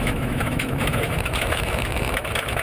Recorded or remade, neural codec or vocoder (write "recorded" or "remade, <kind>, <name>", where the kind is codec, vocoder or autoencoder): remade, autoencoder, DAC-VAE